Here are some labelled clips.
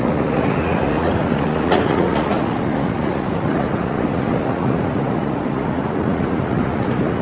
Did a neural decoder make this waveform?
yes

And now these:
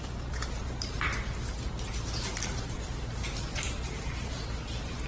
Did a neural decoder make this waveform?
yes